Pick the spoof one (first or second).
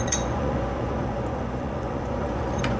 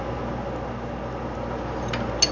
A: first